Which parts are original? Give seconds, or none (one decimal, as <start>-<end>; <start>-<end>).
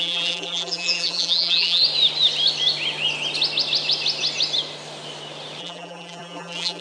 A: 1.8-5.6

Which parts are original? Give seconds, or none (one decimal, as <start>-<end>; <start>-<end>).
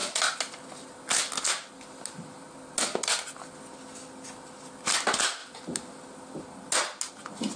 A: 0.0-7.6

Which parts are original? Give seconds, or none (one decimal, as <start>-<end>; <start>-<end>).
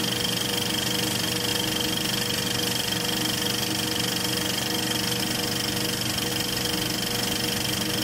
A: 0.0-8.0